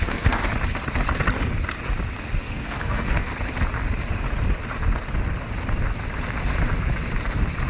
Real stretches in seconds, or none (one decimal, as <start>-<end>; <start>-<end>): 0.4-2.4; 3.3-7.7